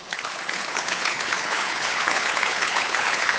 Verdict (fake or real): fake